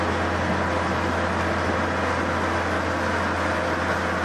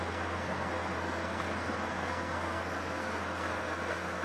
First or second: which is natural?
first